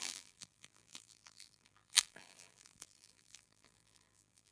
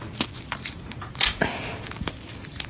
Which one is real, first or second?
second